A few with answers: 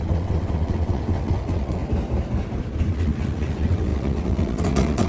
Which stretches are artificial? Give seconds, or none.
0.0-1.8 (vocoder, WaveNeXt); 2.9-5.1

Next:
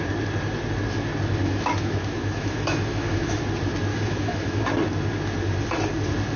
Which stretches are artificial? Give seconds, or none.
1.4-3.4 (autoencoder, DAC-VAE); 3.9-4.6

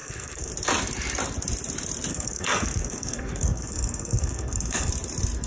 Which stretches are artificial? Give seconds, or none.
0.0-0.5 (codec, SNAC); 2.1-4.9

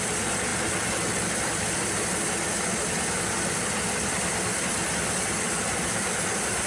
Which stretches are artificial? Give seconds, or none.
none

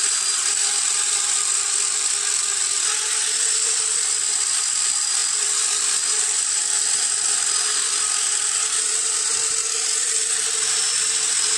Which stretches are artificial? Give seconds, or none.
none

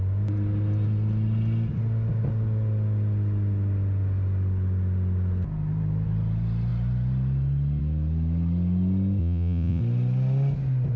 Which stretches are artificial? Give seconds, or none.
9.2-9.8 (vocoder, Vocos)

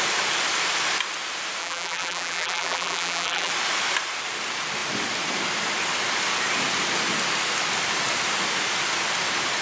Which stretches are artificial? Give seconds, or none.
1.6-3.5 (vocoder, BigVGAN v2)

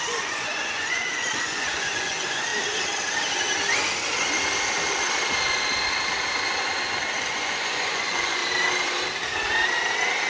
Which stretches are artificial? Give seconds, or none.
0.0-2.5 (vocoder, Vocos); 7.2-8.4